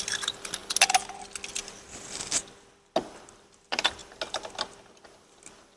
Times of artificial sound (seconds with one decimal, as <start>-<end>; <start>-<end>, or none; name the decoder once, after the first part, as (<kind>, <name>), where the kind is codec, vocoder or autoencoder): none

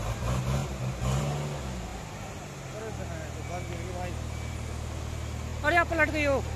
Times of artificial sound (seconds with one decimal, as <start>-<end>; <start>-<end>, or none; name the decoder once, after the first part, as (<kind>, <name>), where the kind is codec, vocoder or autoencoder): none

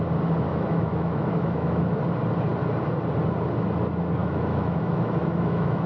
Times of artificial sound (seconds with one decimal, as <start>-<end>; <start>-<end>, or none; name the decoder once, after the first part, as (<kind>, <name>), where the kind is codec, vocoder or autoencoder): 0.5-2.0 (autoencoder, DAC-VAE); 4.2-5.9